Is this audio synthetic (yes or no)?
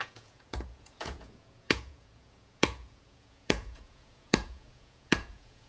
yes